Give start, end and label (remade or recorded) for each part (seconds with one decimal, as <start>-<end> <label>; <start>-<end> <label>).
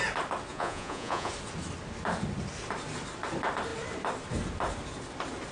0.0-0.5 recorded; 0.5-1.3 remade; 1.3-5.5 recorded